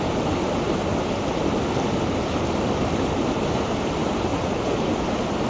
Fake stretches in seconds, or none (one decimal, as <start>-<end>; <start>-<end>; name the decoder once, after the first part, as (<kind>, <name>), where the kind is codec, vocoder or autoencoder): 4.3-4.9 (vocoder, Vocos)